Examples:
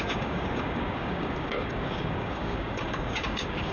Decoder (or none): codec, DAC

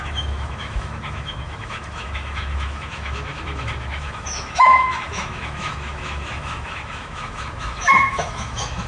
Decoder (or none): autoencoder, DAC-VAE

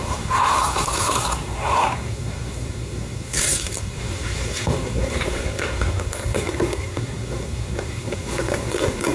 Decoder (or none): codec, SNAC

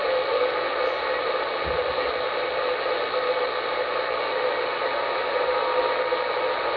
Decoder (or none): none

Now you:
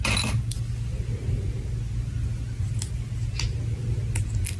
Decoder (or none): none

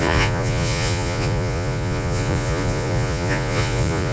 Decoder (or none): vocoder, Vocos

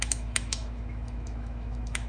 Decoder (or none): autoencoder, DAC-VAE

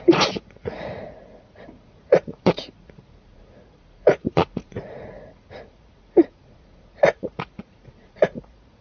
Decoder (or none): vocoder, Vocos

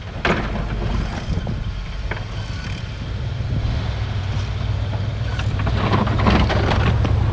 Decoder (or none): none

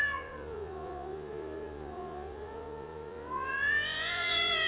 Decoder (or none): vocoder, Vocos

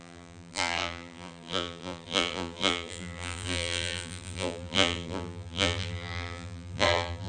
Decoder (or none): vocoder, BigVGAN v2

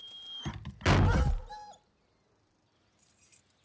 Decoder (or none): none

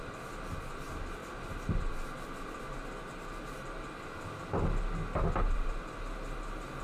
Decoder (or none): none